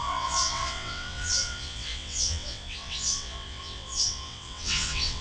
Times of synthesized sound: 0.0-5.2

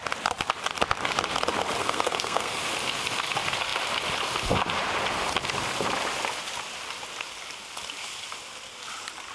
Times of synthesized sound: 1.8-2.6

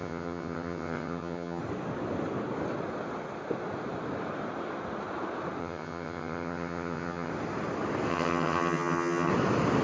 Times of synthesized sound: 0.0-1.6; 5.6-7.3; 8.1-9.3

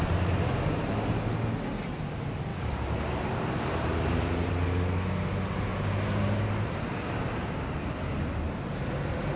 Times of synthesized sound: 2.5-4.5; 5.7-7.0

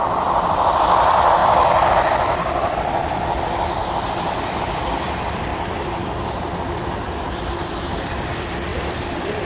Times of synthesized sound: 0.0-1.4; 1.9-5.5; 8.1-9.4